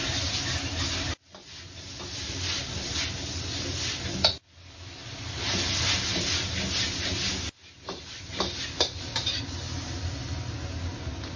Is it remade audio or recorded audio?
recorded